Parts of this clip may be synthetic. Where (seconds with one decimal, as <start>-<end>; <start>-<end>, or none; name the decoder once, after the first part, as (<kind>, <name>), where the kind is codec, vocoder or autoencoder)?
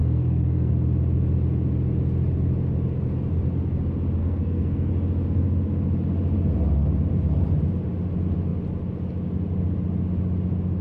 0.0-0.7 (codec, SNAC); 4.2-4.9